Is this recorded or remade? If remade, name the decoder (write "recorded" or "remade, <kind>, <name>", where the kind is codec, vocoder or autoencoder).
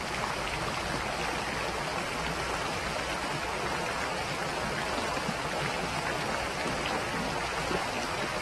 recorded